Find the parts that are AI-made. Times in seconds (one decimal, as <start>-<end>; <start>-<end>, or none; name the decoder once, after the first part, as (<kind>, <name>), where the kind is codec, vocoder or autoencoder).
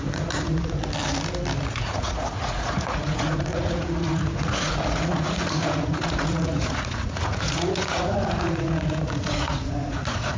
0.0-0.8 (vocoder, Vocos); 1.7-10.4